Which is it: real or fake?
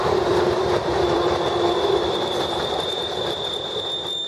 fake